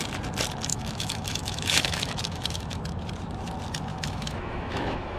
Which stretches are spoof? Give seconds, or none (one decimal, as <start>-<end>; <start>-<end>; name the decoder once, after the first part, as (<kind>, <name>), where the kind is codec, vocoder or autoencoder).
0.7-2.8 (autoencoder, DAC-VAE); 3.9-5.2